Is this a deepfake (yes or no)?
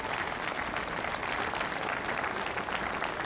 no